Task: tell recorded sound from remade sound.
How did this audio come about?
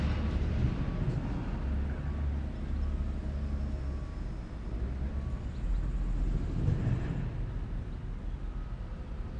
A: recorded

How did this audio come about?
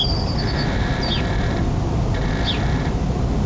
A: recorded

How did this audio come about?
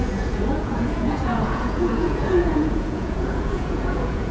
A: remade